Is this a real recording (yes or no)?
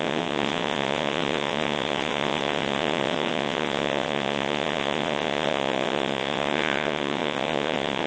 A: no